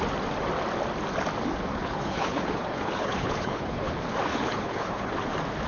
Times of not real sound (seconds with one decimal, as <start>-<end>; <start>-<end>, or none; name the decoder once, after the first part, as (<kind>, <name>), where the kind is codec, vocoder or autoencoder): 1.7-3.9 (codec, HILCodec); 4.3-5.1